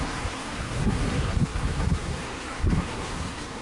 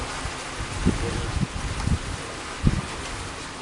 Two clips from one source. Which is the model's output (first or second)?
first